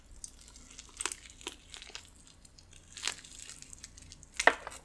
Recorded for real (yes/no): yes